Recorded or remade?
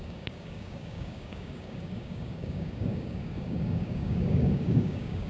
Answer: remade